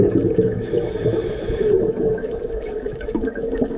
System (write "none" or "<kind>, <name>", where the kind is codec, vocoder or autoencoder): autoencoder, DAC-VAE